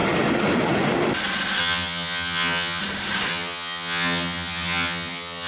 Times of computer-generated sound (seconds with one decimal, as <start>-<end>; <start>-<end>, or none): 1.6-2.8; 3.3-5.5